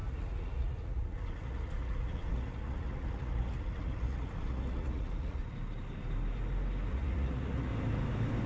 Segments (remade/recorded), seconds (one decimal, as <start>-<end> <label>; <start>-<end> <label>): 0.0-5.4 remade; 5.4-6.9 recorded; 6.9-7.7 remade; 7.7-8.5 recorded